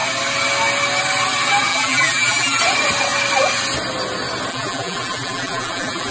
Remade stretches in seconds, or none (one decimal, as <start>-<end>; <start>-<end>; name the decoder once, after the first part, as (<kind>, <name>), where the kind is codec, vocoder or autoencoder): 1.7-2.6 (vocoder, BigVGAN v2); 4.5-6.1